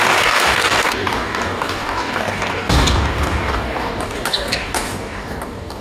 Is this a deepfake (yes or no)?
yes